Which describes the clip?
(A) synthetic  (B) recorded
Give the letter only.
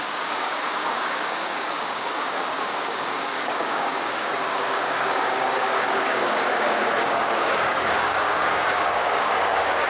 A